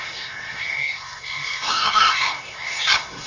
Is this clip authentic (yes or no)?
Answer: no